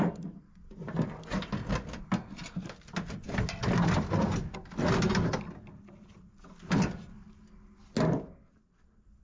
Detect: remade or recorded recorded